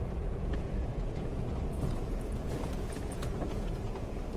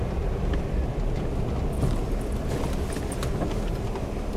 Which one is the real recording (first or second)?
second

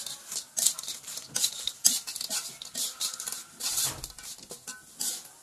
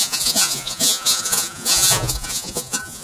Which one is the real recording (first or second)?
first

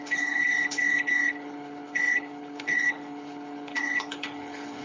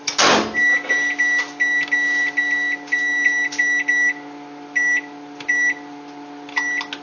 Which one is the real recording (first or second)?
second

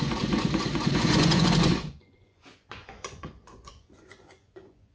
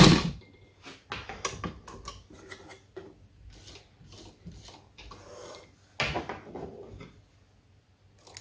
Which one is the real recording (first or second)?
second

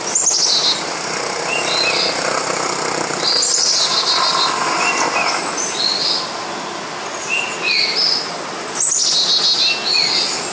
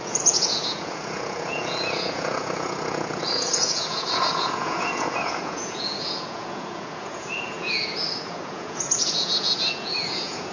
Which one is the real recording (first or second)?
first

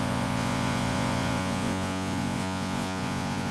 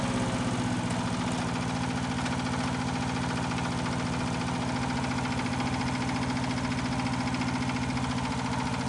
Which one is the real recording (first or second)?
second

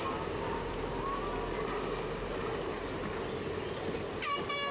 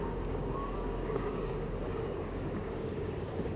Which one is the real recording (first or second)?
first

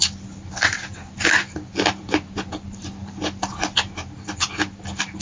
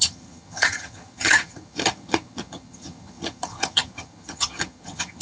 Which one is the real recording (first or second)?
first